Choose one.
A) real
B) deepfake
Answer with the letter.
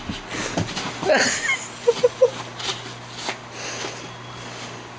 A